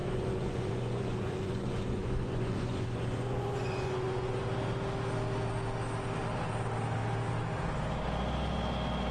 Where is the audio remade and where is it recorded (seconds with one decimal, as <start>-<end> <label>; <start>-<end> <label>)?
0.0-4.4 remade; 4.4-9.1 recorded